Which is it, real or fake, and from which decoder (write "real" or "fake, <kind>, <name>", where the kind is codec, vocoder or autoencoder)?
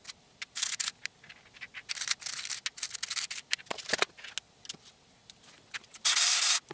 real